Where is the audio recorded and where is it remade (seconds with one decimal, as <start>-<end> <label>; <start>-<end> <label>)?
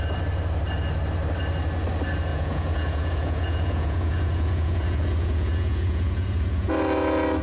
0.0-2.3 recorded; 2.3-6.7 remade; 6.7-7.4 recorded